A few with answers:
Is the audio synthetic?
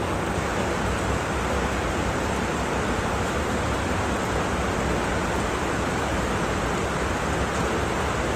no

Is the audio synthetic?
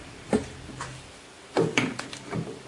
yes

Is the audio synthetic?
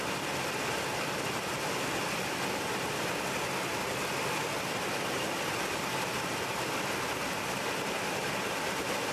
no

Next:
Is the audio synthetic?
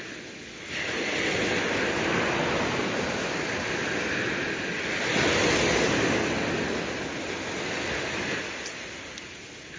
no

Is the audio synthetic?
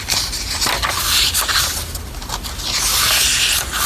no